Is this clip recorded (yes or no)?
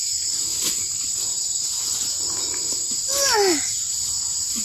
yes